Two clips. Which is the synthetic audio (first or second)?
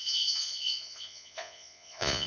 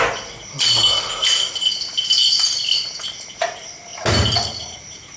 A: first